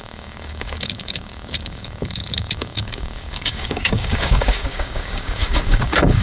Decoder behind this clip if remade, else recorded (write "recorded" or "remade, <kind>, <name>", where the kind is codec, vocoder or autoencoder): remade, codec, DAC